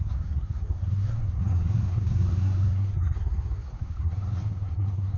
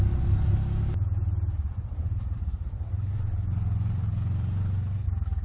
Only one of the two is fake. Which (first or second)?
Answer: first